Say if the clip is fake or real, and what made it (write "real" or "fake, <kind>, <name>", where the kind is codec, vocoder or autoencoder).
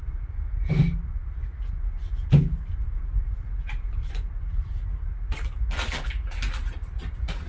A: real